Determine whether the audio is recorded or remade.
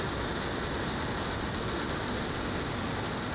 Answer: recorded